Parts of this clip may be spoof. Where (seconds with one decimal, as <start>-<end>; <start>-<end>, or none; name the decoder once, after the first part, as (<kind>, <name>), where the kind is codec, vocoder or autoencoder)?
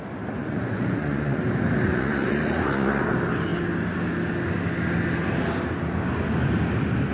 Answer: 0.4-1.4 (vocoder, Vocos); 1.9-3.0